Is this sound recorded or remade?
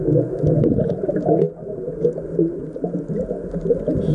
recorded